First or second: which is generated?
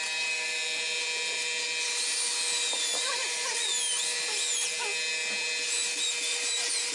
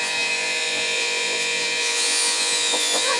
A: second